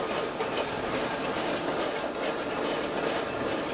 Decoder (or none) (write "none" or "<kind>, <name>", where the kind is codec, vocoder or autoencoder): none